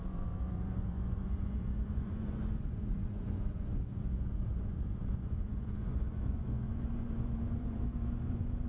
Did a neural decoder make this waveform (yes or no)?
yes